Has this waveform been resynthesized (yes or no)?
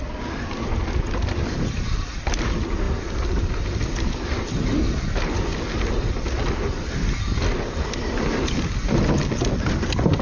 no